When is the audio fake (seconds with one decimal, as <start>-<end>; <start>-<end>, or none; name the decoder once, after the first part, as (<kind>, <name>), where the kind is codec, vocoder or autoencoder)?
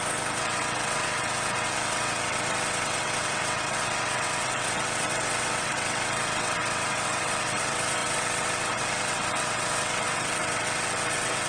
0.0-11.5 (vocoder, WaveNeXt)